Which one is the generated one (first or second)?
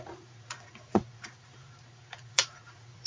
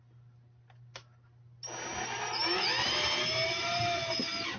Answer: first